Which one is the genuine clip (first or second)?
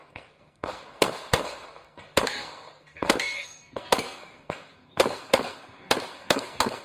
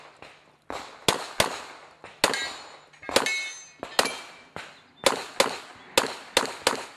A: second